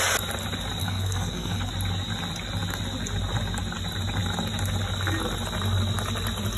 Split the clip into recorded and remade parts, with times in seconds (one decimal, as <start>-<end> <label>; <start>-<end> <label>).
0.0-0.8 recorded; 0.8-1.7 remade; 1.7-6.6 recorded